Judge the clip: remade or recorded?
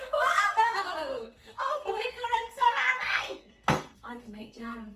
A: remade